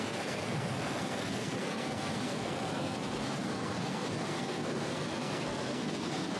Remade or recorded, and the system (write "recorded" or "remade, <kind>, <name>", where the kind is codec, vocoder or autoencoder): remade, codec, SNAC